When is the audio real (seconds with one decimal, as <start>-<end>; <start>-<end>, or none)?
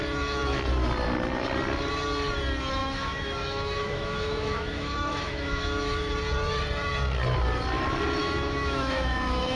0.0-2.8; 6.1-8.2